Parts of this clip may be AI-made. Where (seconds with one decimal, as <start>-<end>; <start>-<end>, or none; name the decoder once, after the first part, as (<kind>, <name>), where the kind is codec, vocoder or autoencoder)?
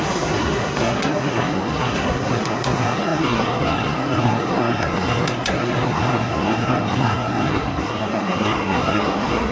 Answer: 0.0-9.5 (codec, SNAC)